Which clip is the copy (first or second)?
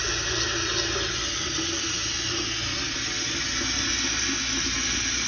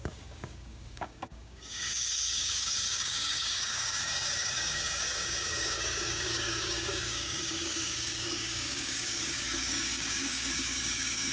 second